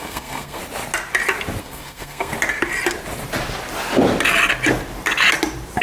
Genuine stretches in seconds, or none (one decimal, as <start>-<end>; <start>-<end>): 0.6-1.6; 2.3-5.8